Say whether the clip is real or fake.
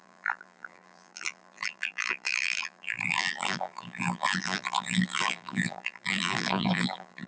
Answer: fake